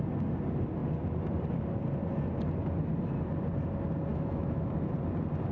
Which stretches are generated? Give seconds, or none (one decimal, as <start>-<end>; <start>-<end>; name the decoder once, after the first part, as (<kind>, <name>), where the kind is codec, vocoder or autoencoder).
4.1-4.7 (autoencoder, DAC-VAE)